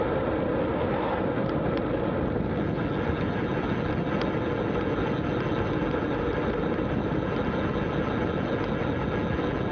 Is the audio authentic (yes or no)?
yes